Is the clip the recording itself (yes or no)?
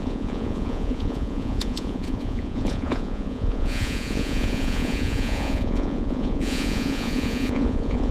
no